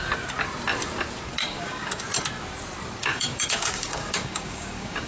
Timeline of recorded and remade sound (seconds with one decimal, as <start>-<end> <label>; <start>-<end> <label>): 0.0-1.4 recorded; 1.4-2.1 remade; 2.1-3.0 recorded; 3.0-5.1 remade